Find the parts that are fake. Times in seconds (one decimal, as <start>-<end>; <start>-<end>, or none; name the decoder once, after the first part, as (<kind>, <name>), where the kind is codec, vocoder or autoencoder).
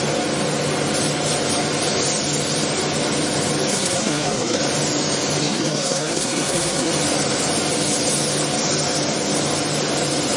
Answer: 3.7-4.6 (codec, SNAC); 5.4-6.9